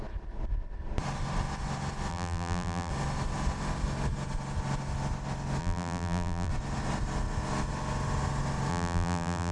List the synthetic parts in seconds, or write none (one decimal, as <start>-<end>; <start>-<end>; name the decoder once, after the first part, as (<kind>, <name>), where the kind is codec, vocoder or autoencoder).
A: 2.1-2.9 (vocoder, BigVGAN v2); 5.6-6.5; 8.7-9.5

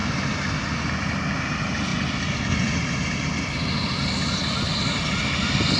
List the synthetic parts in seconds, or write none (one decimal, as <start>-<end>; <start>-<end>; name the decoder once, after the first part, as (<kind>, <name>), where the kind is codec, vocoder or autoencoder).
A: none

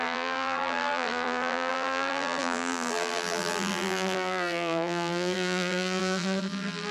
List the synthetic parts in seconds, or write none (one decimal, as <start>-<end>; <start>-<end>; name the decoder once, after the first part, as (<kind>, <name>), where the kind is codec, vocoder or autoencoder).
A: 0.0-6.9 (vocoder, BigVGAN v2)

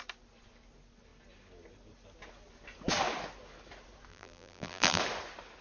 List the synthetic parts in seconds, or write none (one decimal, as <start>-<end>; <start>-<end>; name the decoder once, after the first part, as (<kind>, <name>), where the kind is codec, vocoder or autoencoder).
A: 4.1-5.0 (vocoder, BigVGAN v2)